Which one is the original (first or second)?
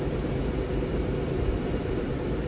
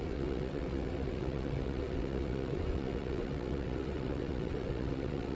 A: first